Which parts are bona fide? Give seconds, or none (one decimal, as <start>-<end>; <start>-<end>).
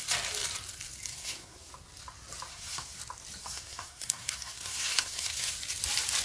0.0-1.1; 1.7-2.5; 3.0-3.4; 5.5-6.2